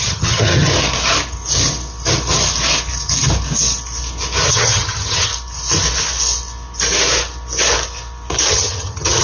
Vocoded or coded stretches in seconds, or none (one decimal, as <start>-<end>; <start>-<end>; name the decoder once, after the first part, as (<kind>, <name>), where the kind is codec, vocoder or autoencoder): 0.0-0.7 (vocoder, HiFi-GAN); 4.5-5.3; 8.5-9.2